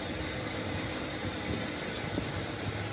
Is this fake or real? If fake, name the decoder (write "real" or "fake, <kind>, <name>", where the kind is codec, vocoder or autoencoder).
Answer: real